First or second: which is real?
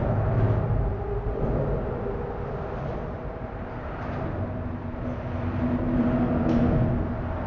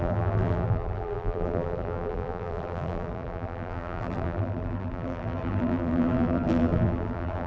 first